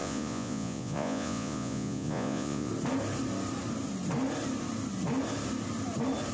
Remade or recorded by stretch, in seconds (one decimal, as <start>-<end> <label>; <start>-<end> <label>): 0.0-2.7 remade; 2.7-6.3 recorded

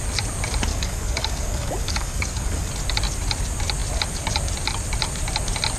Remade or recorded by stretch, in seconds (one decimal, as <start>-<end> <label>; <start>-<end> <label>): 0.0-0.7 recorded; 0.7-2.7 remade; 2.7-5.8 recorded

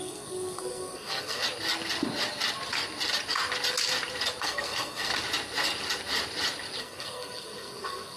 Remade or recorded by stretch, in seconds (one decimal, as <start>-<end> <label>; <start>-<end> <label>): 0.0-1.4 remade; 1.4-4.4 recorded; 4.4-5.1 remade; 5.1-6.8 recorded; 6.8-8.2 remade

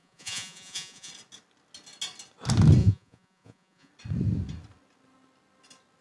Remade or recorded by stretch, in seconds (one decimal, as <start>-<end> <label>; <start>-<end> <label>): 0.0-1.1 remade; 1.1-2.8 recorded; 2.8-3.9 remade; 3.9-6.0 recorded

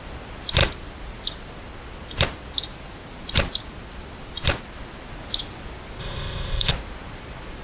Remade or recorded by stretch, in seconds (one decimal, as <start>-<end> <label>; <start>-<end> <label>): 0.0-6.0 recorded; 6.0-6.7 remade; 6.7-7.6 recorded

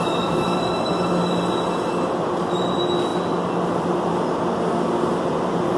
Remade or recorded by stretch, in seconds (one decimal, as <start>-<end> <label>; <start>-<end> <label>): 0.0-5.8 recorded

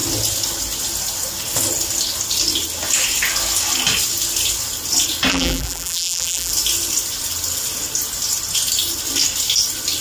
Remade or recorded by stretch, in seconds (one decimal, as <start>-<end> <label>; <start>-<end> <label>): 0.0-5.3 recorded; 5.3-6.5 remade; 6.5-10.0 recorded

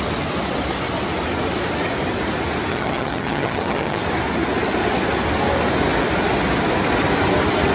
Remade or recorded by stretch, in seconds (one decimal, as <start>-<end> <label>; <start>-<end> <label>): 0.0-2.7 recorded; 2.7-4.0 remade; 4.0-7.7 recorded